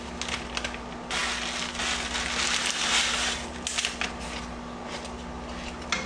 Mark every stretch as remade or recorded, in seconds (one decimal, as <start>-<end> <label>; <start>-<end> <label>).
0.0-6.1 recorded